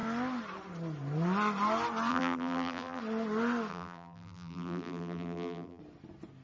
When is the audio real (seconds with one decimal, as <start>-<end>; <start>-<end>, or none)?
0.0-2.1; 3.0-3.7; 5.8-6.4